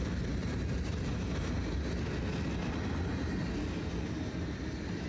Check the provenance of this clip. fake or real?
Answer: real